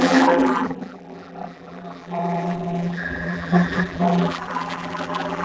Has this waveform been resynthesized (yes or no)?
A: yes